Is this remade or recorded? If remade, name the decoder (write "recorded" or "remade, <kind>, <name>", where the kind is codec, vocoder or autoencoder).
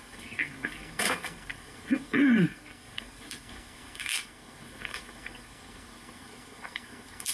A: remade, codec, SNAC